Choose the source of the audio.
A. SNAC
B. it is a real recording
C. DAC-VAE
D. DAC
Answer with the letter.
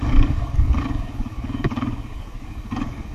D